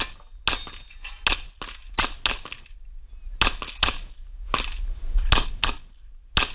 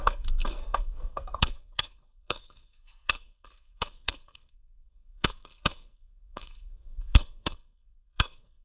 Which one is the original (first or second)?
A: first